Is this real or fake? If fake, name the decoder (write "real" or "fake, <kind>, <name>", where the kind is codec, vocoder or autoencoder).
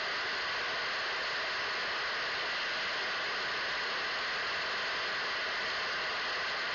real